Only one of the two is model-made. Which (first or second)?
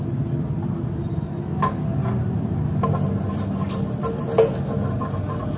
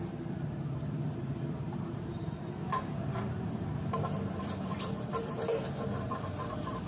second